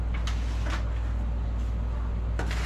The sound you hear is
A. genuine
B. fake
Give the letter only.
A